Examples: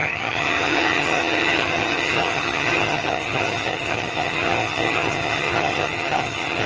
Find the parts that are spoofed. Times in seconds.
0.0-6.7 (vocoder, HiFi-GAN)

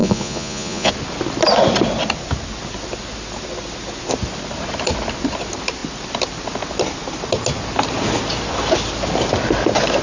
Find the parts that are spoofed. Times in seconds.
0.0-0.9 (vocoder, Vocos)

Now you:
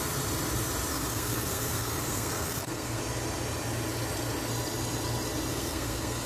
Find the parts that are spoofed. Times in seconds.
0.9-3.0 (codec, SNAC); 5.5-6.3

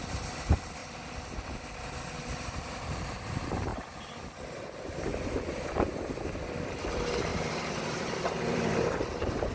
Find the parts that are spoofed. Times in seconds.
0.8-1.9 (vocoder, BigVGAN v2); 3.7-4.5; 7.3-8.7